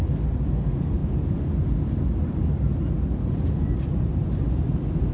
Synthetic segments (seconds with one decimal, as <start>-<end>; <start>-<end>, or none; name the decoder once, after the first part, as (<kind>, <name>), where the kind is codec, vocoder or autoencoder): none